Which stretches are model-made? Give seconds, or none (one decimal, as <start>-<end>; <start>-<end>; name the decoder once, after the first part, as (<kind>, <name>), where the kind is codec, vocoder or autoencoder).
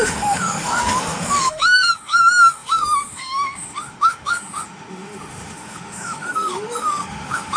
0.0-7.6 (autoencoder, DAC-VAE)